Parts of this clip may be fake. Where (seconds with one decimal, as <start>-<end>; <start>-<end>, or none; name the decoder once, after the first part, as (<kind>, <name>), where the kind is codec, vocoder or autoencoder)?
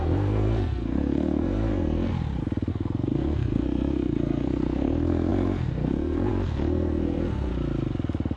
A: 0.0-2.1 (codec, SNAC); 2.7-7.5